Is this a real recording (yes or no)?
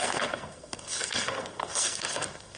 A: no